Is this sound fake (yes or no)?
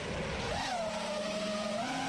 no